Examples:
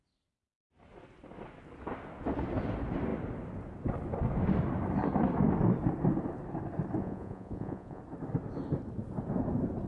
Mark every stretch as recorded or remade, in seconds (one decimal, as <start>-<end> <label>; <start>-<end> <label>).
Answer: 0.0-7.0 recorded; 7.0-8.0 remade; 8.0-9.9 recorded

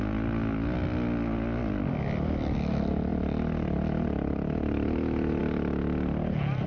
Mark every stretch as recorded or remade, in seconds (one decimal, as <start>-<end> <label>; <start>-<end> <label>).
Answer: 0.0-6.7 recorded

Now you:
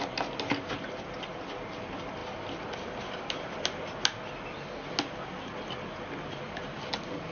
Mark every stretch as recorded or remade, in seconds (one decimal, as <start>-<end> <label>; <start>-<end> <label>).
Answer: 0.0-7.3 recorded

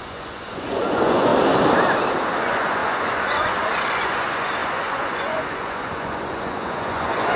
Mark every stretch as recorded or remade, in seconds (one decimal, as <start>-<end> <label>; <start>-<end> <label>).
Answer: 0.0-1.3 remade; 1.3-2.4 recorded; 2.4-7.4 remade